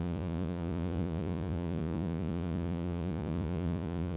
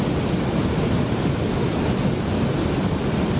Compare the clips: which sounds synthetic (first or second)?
first